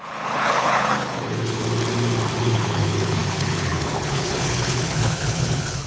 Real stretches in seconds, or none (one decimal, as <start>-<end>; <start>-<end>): 1.6-2.4